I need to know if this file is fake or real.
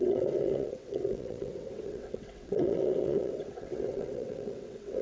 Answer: fake